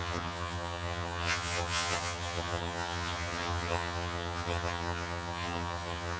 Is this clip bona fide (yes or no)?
no